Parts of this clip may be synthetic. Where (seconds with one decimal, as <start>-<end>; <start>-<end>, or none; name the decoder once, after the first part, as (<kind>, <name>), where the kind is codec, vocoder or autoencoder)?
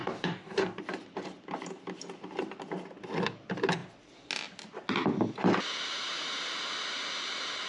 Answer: 0.0-0.8 (codec, DAC)